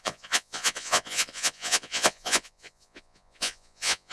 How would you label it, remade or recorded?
remade